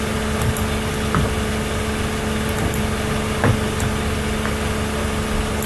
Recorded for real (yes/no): yes